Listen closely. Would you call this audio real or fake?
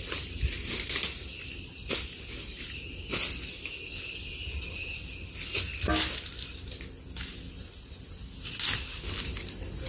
real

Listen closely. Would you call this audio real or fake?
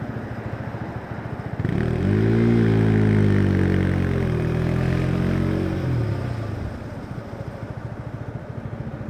real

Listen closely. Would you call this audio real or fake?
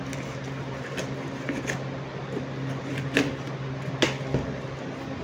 real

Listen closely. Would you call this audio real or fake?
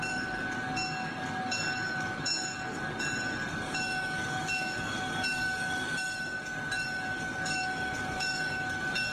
fake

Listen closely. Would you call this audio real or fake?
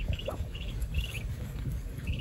fake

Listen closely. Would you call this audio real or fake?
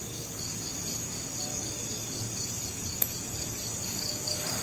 fake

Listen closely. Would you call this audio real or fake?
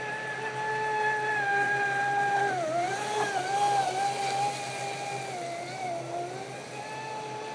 real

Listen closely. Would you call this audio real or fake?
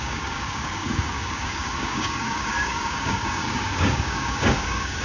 fake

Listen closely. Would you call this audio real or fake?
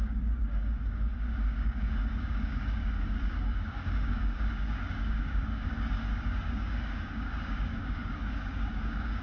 fake